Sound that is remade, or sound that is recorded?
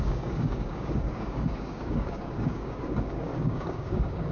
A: remade